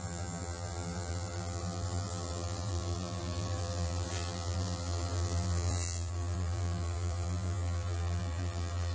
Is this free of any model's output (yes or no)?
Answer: no